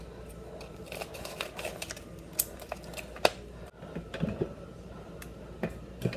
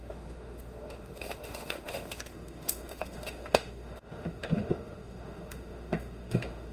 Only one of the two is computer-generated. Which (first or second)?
second